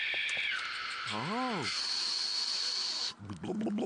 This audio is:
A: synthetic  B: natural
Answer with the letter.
B